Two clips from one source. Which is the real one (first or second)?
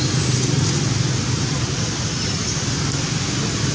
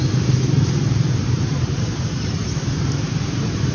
first